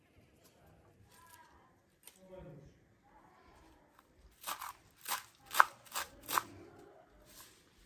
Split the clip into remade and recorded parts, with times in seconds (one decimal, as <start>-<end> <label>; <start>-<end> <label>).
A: 0.0-7.9 recorded